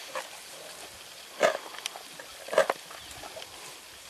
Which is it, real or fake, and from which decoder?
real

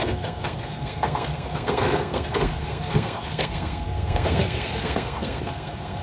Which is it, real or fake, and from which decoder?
fake, codec, SNAC